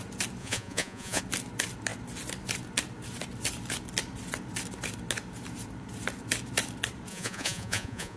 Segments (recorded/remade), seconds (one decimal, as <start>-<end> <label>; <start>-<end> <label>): 0.0-0.4 recorded; 0.4-1.2 remade; 1.2-7.1 recorded; 7.1-8.2 remade